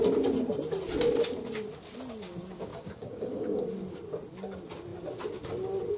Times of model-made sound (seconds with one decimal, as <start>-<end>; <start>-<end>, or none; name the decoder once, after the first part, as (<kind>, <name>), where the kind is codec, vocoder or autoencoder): 2.7-3.6 (codec, DAC)